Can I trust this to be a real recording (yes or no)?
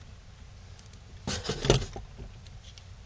yes